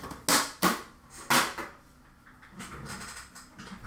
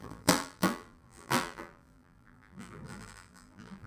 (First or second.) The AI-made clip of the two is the second